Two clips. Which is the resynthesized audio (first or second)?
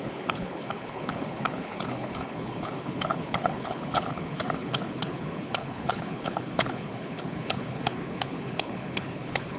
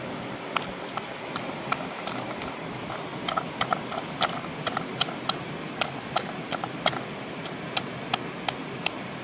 first